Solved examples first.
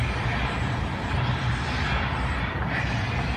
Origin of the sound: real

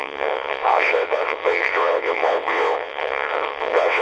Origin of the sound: fake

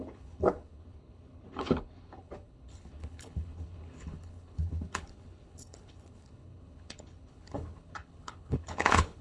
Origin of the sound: fake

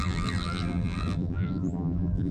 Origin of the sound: fake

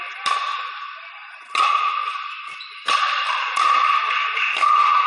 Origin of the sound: real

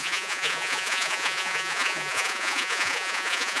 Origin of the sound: fake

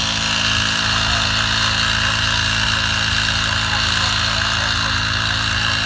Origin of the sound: real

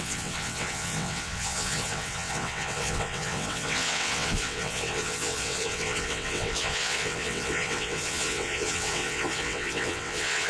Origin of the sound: fake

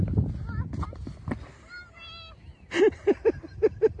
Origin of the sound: real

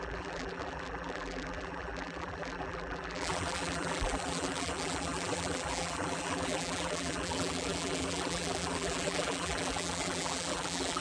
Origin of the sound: fake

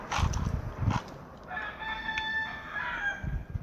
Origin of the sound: real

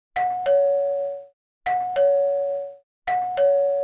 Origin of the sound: real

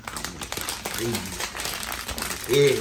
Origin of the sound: real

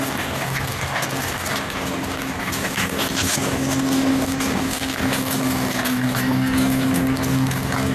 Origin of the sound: fake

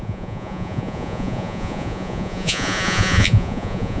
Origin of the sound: fake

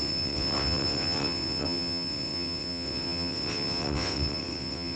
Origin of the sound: fake